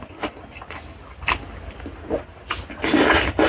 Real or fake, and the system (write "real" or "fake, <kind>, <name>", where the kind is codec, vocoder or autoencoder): real